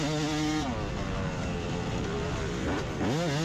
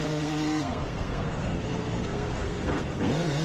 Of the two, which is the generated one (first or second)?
second